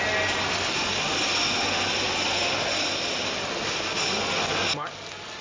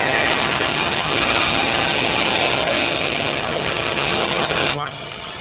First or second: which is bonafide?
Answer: first